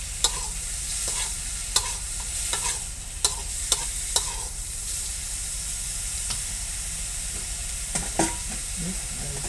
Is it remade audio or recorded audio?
recorded